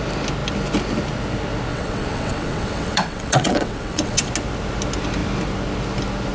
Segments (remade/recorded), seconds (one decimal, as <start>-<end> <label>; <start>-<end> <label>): 0.0-1.7 recorded; 1.7-4.3 remade; 4.3-6.3 recorded